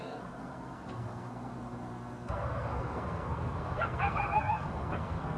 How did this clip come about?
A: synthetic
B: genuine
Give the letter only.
A